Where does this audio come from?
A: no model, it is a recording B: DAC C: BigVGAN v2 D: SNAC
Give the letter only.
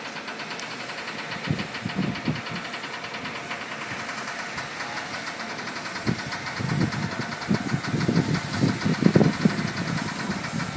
A